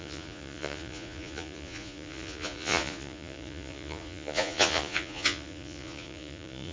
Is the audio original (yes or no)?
no